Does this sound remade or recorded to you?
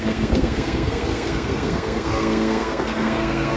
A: remade